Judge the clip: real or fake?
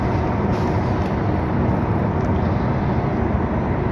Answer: real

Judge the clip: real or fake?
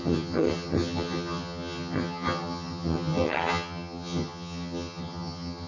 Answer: fake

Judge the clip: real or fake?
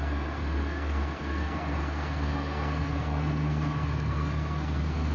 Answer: fake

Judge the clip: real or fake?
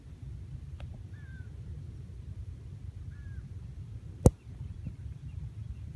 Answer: fake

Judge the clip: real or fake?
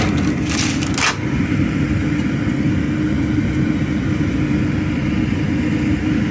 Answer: real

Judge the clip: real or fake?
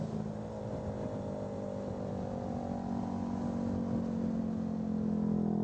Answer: real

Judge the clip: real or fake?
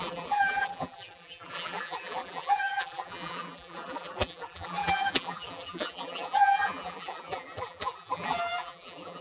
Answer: fake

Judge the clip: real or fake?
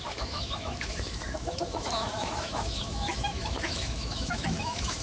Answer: fake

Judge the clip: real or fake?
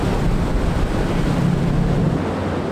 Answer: real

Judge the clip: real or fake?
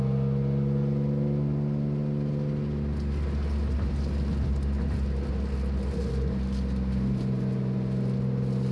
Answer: real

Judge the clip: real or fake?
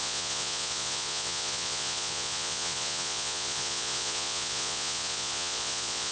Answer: fake